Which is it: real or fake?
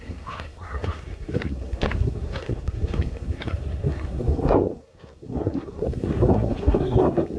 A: fake